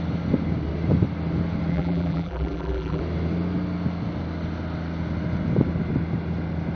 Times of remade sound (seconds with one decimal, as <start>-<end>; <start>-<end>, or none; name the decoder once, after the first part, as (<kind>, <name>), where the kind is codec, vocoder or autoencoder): 1.7-3.0 (vocoder, BigVGAN v2)